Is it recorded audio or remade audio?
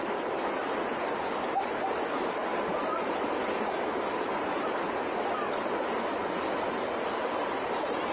recorded